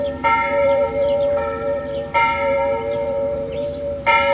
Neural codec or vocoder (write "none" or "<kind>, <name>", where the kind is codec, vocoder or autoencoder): vocoder, BigVGAN v2